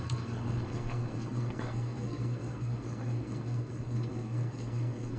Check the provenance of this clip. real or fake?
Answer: fake